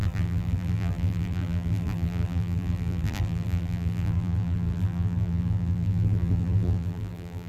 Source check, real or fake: fake